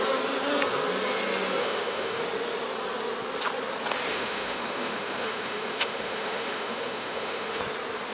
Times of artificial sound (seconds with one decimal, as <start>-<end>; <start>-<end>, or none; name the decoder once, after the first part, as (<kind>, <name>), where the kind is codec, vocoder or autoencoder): 1.6-2.2 (autoencoder, DAC-VAE); 4.1-7.6